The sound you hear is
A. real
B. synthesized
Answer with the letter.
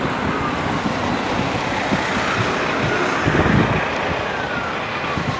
A